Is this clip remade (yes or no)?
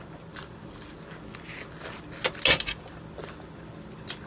no